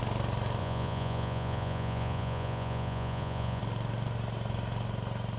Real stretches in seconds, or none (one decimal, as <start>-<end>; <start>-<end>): 0.0-0.6; 3.6-5.4